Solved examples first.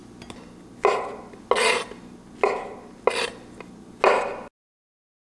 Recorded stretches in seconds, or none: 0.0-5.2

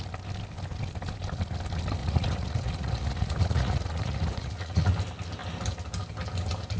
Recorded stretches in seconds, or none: 0.0-2.0; 4.9-6.8

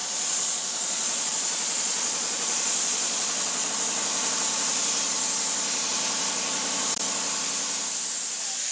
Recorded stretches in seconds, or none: 3.7-8.7